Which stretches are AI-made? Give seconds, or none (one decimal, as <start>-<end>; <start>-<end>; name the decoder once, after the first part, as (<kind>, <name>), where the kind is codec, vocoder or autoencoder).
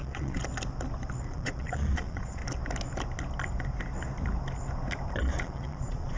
0.0-0.4 (vocoder, Vocos); 1.2-2.4; 5.2-6.2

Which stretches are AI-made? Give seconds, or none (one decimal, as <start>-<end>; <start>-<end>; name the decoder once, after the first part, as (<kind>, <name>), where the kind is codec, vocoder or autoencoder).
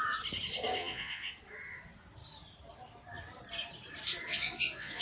0.8-1.3 (vocoder, Vocos); 4.3-5.0